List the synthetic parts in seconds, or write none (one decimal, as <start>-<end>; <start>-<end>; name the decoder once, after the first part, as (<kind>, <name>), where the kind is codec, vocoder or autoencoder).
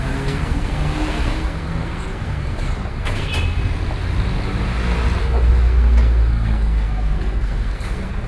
0.0-3.3 (codec, SNAC); 5.2-8.3